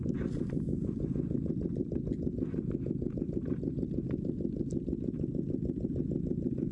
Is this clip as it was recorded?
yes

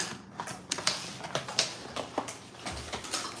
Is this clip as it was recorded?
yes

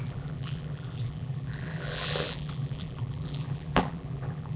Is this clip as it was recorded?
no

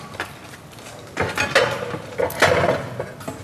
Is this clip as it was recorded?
yes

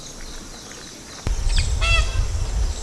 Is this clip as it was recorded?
yes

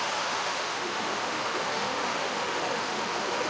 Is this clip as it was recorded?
no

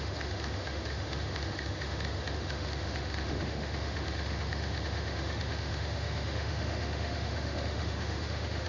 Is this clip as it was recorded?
no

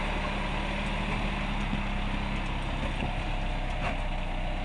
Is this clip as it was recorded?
yes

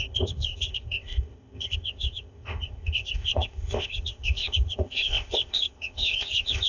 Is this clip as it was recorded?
no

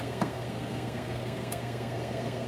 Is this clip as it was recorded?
no